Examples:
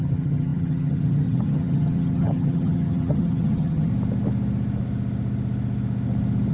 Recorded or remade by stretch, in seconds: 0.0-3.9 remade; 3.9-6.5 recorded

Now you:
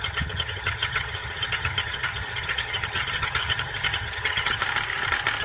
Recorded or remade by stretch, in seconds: 0.0-4.6 remade; 4.6-5.4 recorded

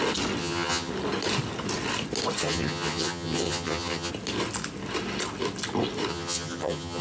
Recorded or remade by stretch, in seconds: 0.0-0.4 recorded; 0.4-0.9 remade; 0.9-2.4 recorded; 2.4-4.1 remade; 4.1-6.1 recorded; 6.1-7.0 remade

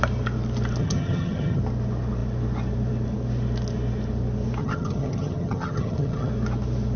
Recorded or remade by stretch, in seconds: 0.0-0.8 recorded; 0.8-1.6 remade; 1.6-4.6 recorded; 4.6-6.3 remade; 6.3-7.0 recorded

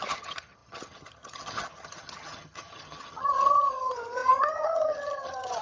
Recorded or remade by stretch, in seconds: 0.0-5.6 remade